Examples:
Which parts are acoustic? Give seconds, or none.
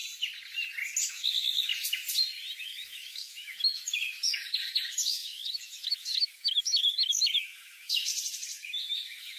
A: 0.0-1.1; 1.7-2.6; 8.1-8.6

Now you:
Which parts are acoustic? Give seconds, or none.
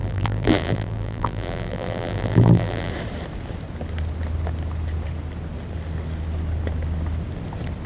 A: 2.9-7.9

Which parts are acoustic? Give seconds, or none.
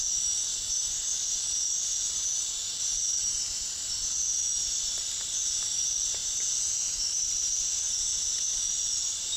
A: 0.0-3.0; 3.7-6.2; 7.0-9.4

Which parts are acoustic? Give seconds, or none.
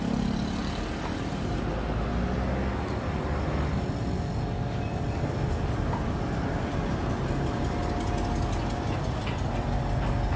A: 0.0-10.4